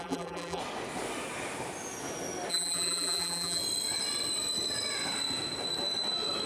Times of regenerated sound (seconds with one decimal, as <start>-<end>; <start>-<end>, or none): 0.0-0.6; 2.5-3.6